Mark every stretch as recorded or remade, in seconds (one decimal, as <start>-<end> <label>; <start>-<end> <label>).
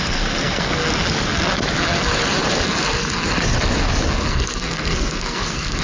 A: 0.0-0.8 remade; 0.8-4.3 recorded; 4.3-5.8 remade